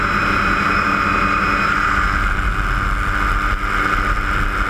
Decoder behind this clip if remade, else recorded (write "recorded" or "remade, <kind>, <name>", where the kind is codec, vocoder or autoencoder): recorded